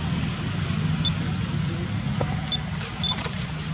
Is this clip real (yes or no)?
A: yes